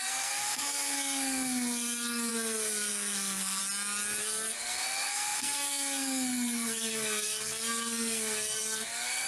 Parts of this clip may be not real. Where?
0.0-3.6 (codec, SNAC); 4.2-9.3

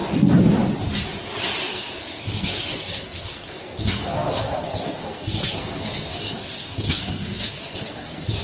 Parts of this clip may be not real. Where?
1.7-8.4 (codec, SNAC)

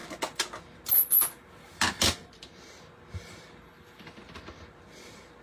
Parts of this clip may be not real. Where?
none